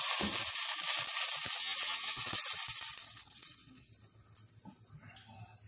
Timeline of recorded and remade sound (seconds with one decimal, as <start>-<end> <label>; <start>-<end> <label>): 0.0-1.6 recorded; 1.6-2.4 remade; 2.4-3.0 recorded; 3.0-3.9 remade; 3.9-5.7 recorded